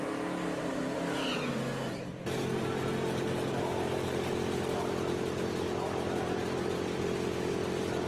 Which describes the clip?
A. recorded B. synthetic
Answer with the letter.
A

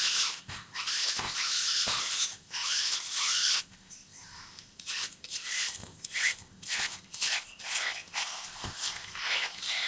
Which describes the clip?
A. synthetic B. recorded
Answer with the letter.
A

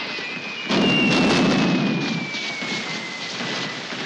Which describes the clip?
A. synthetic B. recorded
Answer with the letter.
B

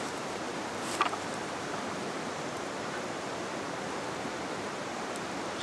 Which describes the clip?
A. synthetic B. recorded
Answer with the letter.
A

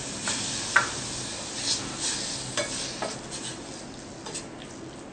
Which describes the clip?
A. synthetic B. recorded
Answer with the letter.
B